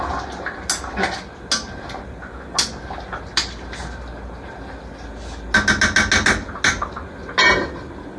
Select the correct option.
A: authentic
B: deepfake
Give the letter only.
A